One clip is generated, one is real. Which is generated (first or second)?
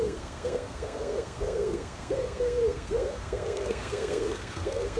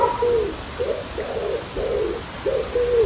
first